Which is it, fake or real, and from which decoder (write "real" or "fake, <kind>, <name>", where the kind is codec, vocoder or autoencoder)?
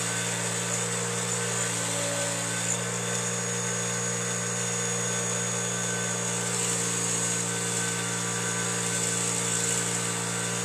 real